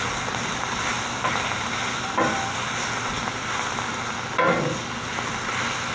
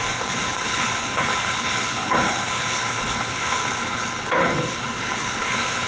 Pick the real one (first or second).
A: first